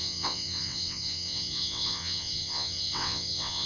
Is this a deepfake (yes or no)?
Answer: yes